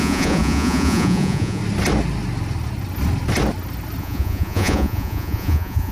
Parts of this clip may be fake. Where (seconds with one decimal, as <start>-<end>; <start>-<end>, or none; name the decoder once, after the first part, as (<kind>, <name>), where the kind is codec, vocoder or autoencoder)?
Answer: 0.0-1.6 (vocoder, Vocos); 4.0-5.9